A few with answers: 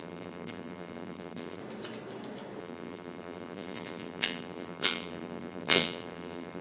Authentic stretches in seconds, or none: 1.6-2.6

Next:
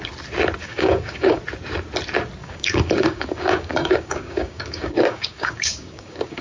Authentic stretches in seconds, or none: 0.0-0.6; 1.4-2.4

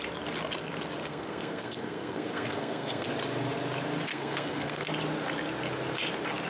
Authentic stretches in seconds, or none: 0.0-1.0; 3.1-4.1; 4.9-6.5

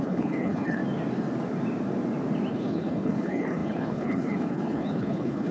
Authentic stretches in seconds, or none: 0.8-2.5